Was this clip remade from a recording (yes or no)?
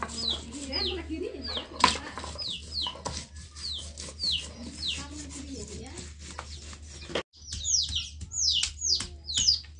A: no